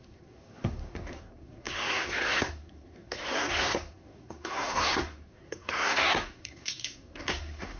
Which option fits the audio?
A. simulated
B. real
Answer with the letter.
A